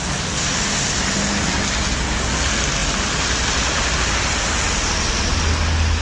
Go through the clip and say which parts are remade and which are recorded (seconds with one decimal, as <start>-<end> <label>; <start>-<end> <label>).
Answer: 0.0-6.0 recorded